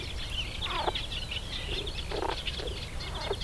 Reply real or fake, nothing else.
real